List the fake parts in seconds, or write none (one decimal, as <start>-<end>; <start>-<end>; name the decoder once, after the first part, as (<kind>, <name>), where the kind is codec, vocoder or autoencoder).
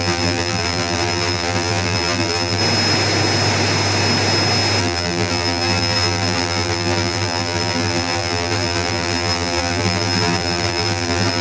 0.0-2.6 (vocoder, BigVGAN v2); 4.8-11.4